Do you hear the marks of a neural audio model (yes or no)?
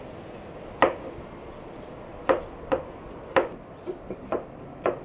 no